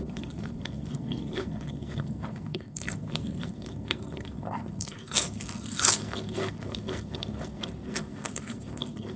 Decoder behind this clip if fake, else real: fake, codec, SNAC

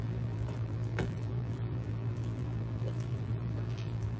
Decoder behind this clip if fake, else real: fake, vocoder, BigVGAN v2